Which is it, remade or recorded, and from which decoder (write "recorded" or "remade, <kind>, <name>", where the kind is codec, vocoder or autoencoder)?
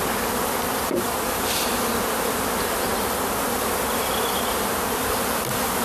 recorded